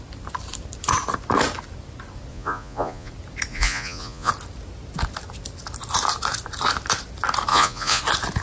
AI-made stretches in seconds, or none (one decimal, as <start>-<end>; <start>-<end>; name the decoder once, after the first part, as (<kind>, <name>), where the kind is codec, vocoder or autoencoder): 2.3-3.1 (vocoder, Vocos); 3.5-4.3; 7.5-8.0